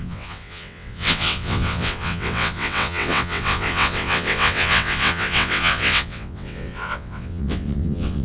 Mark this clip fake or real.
fake